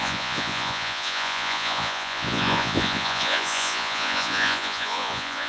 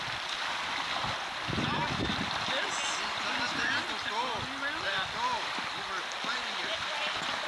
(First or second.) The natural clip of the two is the second